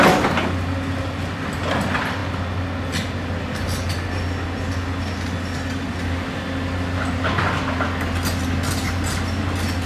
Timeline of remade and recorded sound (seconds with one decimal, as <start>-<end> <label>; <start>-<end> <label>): 0.0-9.9 recorded